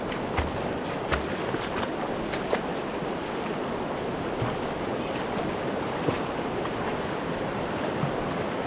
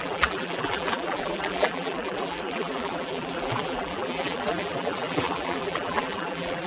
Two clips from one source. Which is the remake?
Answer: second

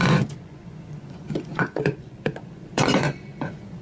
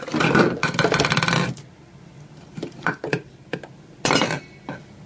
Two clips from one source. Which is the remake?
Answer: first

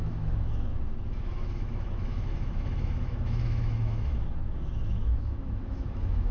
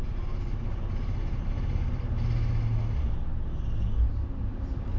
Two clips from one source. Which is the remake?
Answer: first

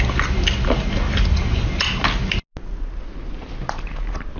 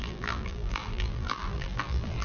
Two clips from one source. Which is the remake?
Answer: second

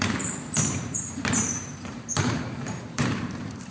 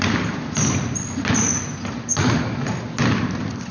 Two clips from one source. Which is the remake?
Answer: first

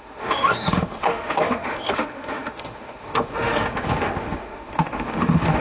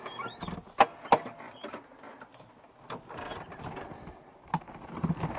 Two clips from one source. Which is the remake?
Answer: first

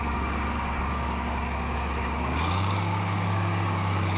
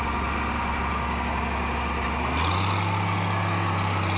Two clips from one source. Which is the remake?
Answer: first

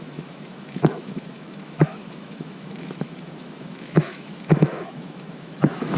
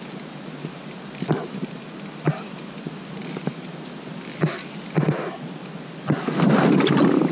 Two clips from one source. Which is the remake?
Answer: first